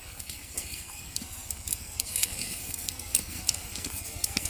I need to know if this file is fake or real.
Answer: fake